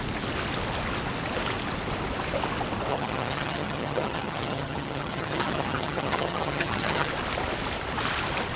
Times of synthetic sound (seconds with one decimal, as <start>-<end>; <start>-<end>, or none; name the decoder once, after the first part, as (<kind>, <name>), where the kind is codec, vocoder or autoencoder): 2.9-7.1 (vocoder, HiFi-GAN)